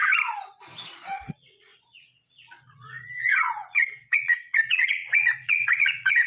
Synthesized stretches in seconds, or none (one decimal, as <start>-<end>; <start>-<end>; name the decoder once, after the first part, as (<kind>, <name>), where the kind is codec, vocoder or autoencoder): 0.8-6.3 (vocoder, Vocos)